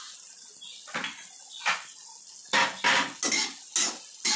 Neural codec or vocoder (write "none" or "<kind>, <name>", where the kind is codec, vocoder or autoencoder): none